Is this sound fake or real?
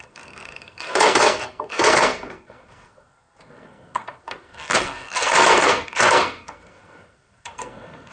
fake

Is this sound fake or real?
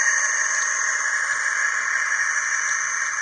real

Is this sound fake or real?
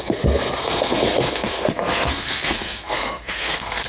fake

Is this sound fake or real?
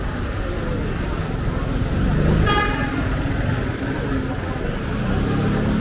real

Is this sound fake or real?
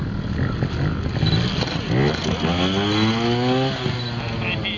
real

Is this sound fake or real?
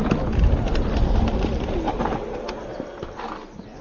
real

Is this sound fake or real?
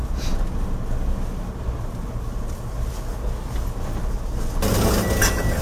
real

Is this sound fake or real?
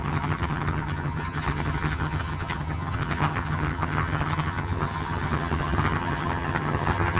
fake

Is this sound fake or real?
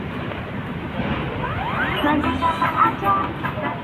real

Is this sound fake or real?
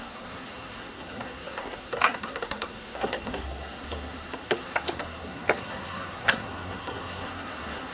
fake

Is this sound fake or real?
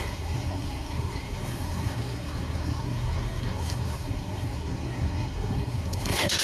fake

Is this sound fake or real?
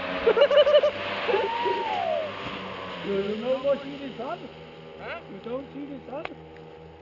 real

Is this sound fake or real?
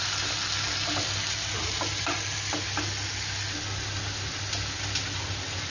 real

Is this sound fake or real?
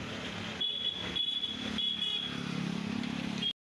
real